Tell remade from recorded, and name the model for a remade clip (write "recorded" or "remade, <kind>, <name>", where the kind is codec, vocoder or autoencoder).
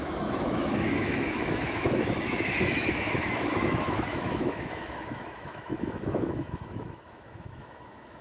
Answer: remade, autoencoder, DAC-VAE